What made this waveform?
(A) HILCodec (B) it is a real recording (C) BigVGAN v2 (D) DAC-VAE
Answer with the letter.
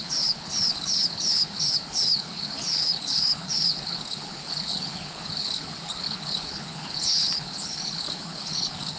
A